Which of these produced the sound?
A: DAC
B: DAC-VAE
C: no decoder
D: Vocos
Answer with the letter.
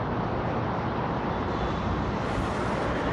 C